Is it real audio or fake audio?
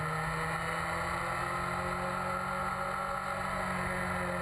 real